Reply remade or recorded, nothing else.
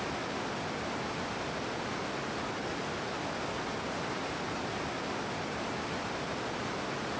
recorded